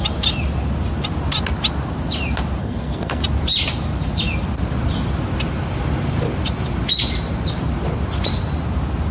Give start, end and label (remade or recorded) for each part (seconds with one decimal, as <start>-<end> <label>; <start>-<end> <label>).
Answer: 0.0-2.6 recorded; 2.6-3.2 remade; 3.2-9.1 recorded